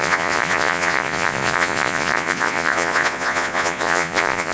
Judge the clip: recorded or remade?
remade